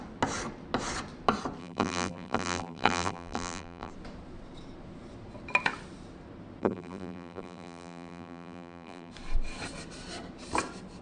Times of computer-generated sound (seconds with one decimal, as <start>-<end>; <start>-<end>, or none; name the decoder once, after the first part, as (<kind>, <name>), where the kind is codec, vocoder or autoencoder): 1.6-3.9 (vocoder, BigVGAN v2); 6.6-9.1

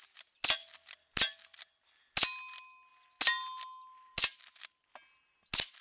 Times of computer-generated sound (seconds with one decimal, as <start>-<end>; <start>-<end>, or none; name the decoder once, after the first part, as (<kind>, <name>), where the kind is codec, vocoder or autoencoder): none

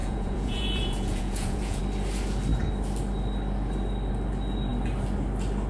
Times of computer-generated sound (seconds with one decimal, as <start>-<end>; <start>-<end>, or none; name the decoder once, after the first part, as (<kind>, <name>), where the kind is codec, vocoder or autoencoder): 0.0-1.8 (vocoder, Vocos)

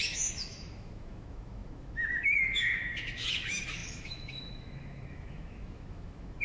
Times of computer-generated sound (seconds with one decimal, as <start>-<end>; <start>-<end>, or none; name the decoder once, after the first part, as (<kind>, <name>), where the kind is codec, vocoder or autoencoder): 0.0-6.4 (autoencoder, DAC-VAE)

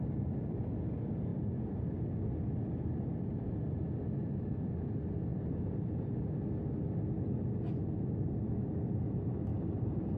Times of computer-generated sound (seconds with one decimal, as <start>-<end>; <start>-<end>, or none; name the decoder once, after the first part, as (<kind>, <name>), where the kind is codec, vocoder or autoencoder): 5.3-6.0 (vocoder, BigVGAN v2); 9.5-10.2

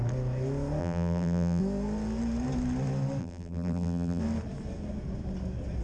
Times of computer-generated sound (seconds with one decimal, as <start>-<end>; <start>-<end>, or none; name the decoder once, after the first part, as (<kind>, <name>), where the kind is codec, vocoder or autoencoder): 0.8-1.6 (vocoder, BigVGAN v2); 3.2-4.2

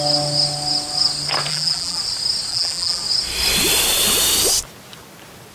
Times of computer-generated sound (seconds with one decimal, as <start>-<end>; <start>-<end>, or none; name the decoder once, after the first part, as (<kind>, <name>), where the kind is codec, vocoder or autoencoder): 1.5-2.0 (vocoder, BigVGAN v2); 2.5-3.0